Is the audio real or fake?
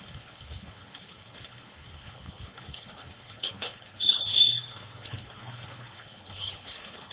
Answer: fake